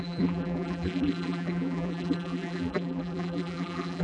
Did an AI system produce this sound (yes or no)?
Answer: yes